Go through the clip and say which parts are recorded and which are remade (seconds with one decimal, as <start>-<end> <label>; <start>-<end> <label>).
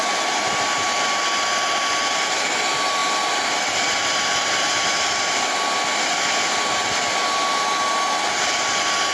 0.0-9.1 recorded